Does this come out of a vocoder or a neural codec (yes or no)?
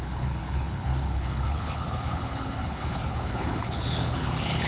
yes